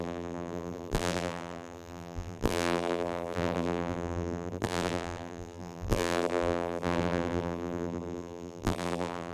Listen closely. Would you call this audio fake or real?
fake